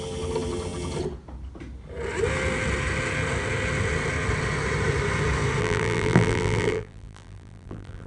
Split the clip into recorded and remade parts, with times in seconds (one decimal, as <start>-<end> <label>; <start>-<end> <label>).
0.0-5.6 recorded; 5.6-8.1 remade